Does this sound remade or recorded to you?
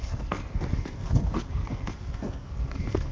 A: remade